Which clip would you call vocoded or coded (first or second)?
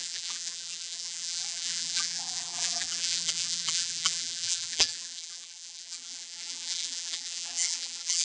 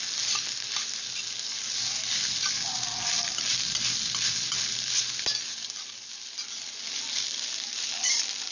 first